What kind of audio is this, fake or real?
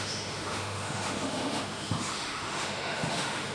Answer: fake